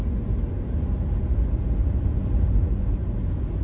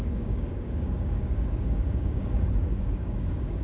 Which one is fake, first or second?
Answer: second